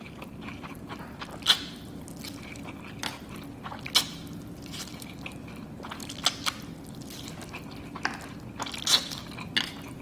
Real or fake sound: real